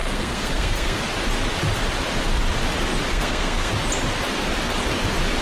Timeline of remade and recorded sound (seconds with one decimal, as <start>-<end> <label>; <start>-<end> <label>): 0.0-1.0 remade; 1.0-3.1 recorded; 3.1-3.7 remade; 3.7-5.4 recorded